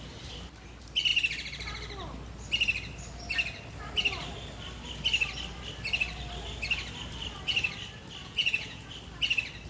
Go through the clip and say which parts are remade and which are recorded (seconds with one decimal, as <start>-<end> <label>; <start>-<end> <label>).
0.0-8.2 recorded; 8.2-8.9 remade; 8.9-9.7 recorded